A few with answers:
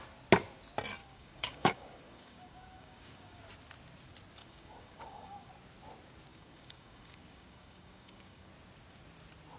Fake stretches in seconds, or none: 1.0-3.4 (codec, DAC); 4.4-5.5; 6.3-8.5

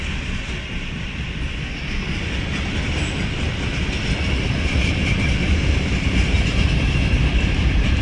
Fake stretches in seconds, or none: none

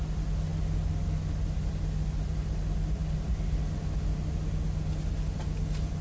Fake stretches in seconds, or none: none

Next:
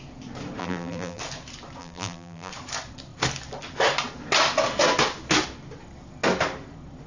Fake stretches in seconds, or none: 0.6-1.2 (vocoder, BigVGAN v2); 1.8-2.5

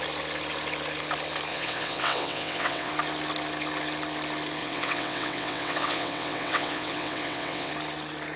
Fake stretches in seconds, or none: 1.5-2.9 (vocoder, WaveNeXt); 4.6-7.7